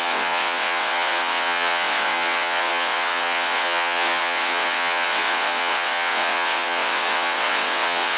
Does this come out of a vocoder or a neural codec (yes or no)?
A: yes